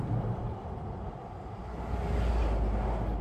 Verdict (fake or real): real